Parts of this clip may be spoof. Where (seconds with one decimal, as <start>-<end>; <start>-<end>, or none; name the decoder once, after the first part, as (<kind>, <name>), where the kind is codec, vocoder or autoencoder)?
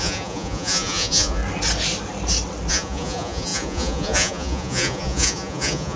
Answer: 0.0-1.4 (vocoder, Vocos); 2.7-6.0